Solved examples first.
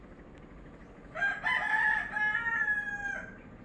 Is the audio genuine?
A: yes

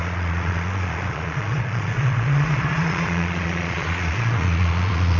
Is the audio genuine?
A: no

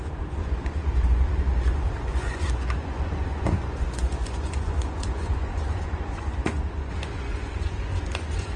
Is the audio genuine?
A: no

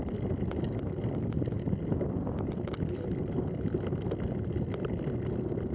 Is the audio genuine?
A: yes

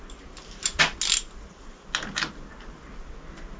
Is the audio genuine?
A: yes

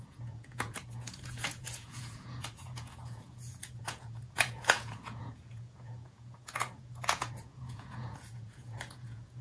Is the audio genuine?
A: no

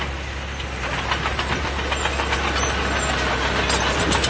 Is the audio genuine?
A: yes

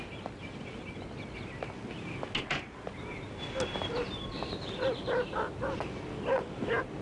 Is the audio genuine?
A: yes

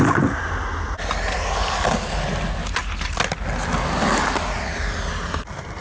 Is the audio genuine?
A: yes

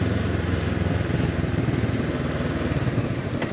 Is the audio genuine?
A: yes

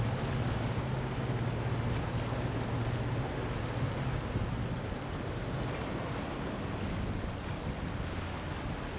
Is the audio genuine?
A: yes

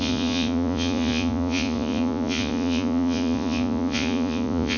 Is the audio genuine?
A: no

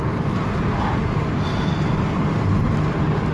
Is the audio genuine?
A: yes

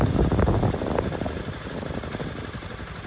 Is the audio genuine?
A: yes